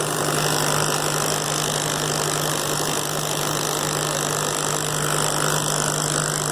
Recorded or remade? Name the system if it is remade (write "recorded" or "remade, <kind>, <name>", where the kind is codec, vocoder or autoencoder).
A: recorded